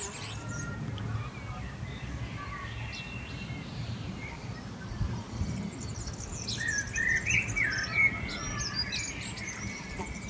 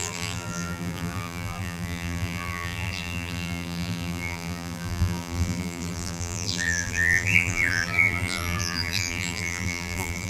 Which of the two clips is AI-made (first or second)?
second